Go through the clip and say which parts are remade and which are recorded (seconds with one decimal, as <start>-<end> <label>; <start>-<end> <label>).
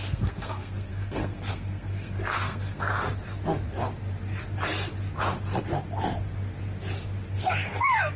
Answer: 0.0-2.9 remade; 2.9-7.3 recorded; 7.3-8.2 remade